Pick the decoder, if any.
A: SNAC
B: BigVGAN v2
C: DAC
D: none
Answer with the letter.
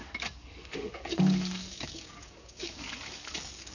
C